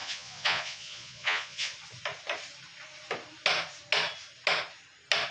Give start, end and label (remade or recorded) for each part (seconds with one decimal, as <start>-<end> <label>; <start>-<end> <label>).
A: 0.0-1.7 remade; 1.7-5.3 recorded